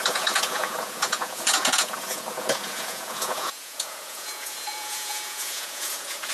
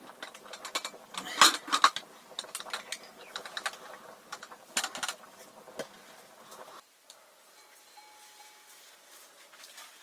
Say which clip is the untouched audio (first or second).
second